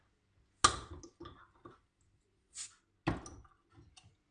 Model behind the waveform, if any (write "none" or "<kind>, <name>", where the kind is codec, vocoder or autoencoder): none